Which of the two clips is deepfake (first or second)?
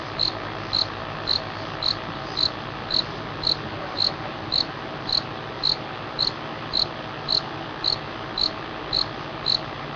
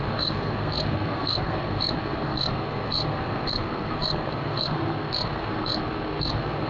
second